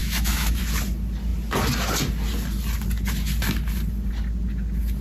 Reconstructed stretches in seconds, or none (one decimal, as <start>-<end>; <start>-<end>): 0.0-0.6